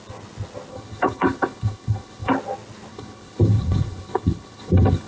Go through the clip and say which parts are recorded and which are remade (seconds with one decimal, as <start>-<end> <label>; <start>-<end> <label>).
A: 0.0-0.7 recorded; 0.7-2.3 remade; 2.3-2.9 recorded; 2.9-5.1 remade